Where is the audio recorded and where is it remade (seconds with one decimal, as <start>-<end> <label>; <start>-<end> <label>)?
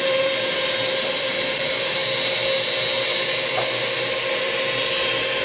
0.0-2.0 remade; 2.0-5.4 recorded